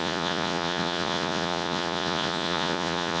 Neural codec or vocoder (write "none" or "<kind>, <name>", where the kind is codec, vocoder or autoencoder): vocoder, Vocos